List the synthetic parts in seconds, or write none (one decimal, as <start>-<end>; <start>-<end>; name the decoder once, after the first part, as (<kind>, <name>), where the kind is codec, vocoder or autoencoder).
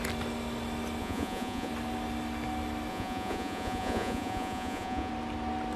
1.0-1.7 (vocoder, Vocos); 2.9-5.1